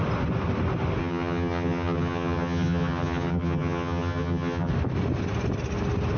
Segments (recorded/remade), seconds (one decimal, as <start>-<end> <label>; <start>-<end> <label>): 0.0-1.0 recorded; 1.0-4.7 remade; 4.7-6.2 recorded